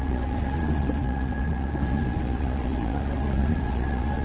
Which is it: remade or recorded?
remade